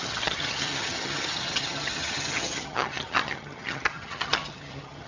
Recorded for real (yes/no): no